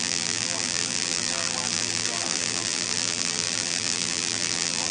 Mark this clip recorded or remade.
remade